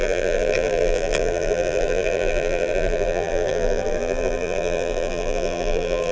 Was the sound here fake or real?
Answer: fake